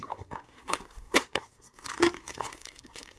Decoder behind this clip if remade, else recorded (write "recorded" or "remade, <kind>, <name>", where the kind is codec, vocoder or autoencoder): remade, codec, SNAC